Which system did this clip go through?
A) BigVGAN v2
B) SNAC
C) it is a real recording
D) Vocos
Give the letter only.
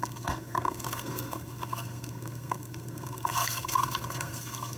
B